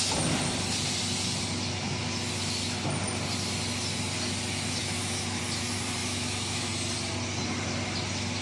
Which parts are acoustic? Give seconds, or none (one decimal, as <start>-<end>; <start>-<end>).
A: 0.0-4.8; 5.4-6.0; 6.7-8.4

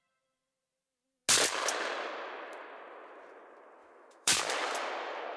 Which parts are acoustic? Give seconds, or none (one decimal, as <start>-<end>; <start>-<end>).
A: 0.0-3.8; 4.4-5.4

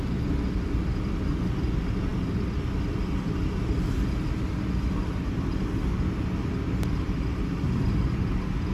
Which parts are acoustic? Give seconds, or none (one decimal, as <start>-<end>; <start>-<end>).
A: 0.0-8.7

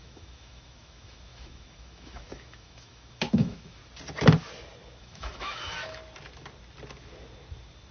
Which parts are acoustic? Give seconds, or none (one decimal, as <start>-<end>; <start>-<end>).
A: 3.8-5.0; 6.0-7.9

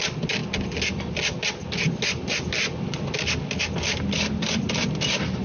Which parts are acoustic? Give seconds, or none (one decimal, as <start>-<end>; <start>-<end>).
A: 0.0-5.4

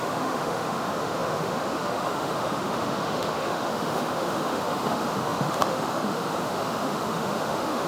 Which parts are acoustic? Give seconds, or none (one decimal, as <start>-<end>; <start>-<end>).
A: none